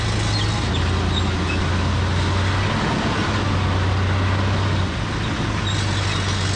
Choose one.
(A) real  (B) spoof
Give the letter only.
A